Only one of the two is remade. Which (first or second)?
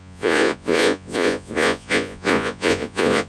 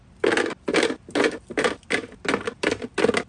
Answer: first